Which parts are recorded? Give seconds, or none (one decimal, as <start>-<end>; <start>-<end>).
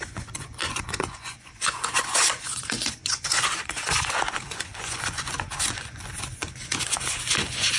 none